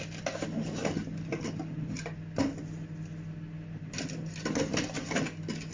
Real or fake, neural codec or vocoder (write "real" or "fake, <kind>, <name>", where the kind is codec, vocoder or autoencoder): real